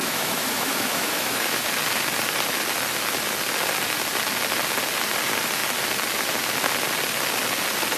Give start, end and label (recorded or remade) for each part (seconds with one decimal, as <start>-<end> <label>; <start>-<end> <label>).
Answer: 0.0-1.7 remade; 1.7-8.0 recorded